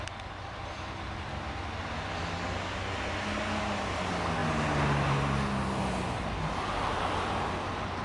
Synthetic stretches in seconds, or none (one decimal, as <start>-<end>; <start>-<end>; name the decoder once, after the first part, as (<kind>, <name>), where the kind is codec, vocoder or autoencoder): none